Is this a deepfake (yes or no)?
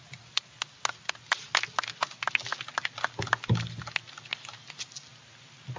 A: no